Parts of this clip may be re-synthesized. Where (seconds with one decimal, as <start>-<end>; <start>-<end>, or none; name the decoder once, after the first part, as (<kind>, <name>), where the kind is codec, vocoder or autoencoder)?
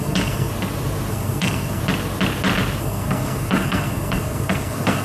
0.0-0.5 (codec, SNAC); 1.1-1.8; 2.8-5.0